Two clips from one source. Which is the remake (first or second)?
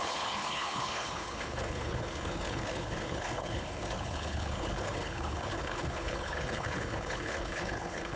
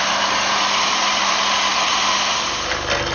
first